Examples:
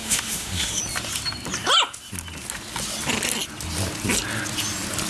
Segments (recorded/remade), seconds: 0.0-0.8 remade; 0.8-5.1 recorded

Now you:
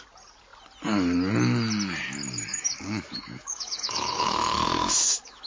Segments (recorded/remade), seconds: 0.0-2.5 recorded; 2.5-5.5 remade

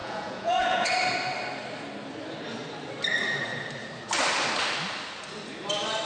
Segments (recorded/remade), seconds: 0.0-0.9 remade; 0.9-6.1 recorded

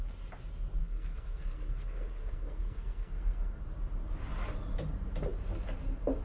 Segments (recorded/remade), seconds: 0.0-0.8 recorded; 0.8-3.6 remade; 3.6-6.2 recorded

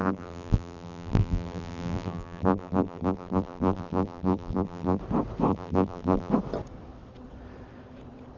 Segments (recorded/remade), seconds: 0.0-5.0 remade; 5.0-5.5 recorded; 5.5-6.3 remade; 6.3-8.4 recorded

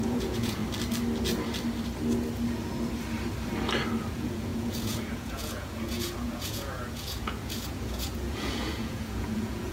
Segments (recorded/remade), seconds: 0.0-0.6 remade; 0.6-4.0 recorded; 4.0-9.7 remade

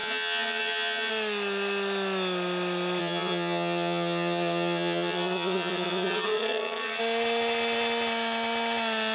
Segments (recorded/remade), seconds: 0.0-1.1 remade; 1.1-3.0 recorded; 3.0-7.0 remade; 7.0-9.1 recorded